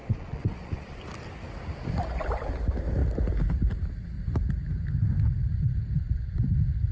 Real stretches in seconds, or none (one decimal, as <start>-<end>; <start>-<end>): 1.0-6.9

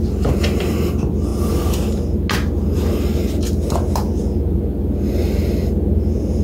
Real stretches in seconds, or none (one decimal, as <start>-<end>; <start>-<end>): 0.0-6.4

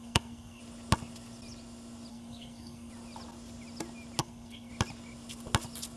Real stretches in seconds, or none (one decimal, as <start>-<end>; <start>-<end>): 0.6-2.1; 2.9-4.2; 4.7-6.0